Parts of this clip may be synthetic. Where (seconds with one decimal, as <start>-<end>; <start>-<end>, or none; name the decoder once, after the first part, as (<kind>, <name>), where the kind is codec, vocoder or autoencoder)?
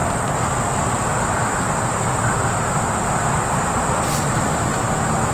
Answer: none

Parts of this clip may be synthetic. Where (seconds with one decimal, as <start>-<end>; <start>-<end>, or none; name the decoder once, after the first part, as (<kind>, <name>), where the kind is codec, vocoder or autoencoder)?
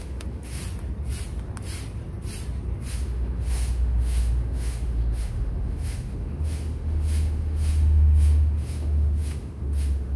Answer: 0.0-0.6 (autoencoder, DAC-VAE); 2.9-10.2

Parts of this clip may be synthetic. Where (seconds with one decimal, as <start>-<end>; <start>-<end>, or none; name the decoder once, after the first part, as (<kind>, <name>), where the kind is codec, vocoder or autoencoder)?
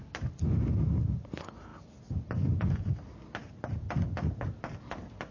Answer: none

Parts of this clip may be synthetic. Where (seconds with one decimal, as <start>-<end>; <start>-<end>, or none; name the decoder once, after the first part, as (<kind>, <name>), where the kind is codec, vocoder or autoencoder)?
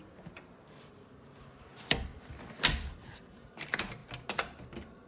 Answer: 0.0-2.1 (vocoder, BigVGAN v2); 2.9-4.0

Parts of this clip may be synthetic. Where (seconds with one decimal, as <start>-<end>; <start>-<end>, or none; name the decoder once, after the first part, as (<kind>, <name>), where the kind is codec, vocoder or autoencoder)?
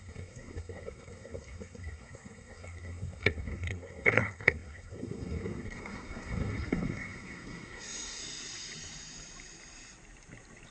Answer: 0.0-8.2 (codec, SNAC)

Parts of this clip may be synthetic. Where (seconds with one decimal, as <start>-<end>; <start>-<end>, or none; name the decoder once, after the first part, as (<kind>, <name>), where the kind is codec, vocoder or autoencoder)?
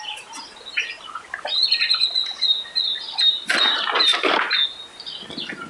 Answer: none